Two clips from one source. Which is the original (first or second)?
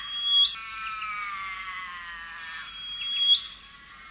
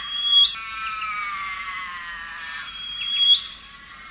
first